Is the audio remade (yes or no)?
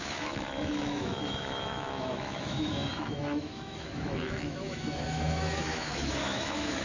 yes